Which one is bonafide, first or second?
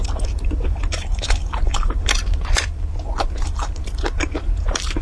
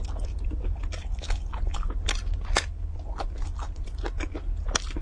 second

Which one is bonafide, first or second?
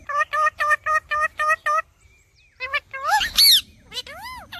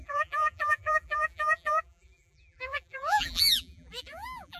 first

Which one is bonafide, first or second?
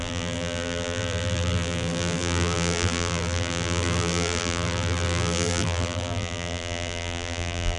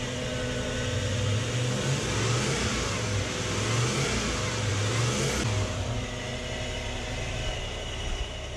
second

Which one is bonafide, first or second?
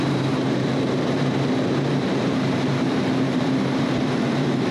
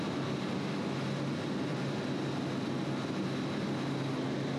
second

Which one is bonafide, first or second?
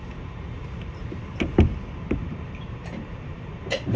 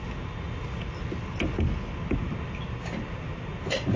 second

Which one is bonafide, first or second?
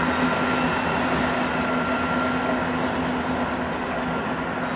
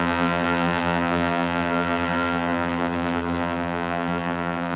first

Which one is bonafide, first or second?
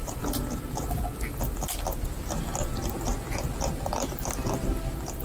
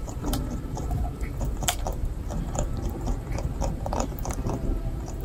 first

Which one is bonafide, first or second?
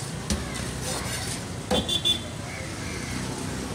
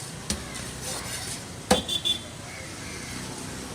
first